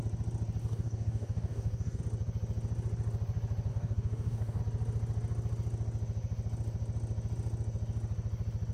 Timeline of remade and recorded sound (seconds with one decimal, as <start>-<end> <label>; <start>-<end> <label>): 0.0-0.6 recorded; 0.6-2.0 remade; 2.0-3.7 recorded; 3.7-4.6 remade; 4.6-8.7 recorded